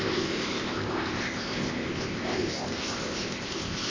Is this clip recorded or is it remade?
remade